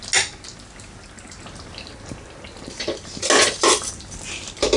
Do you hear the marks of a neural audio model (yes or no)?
no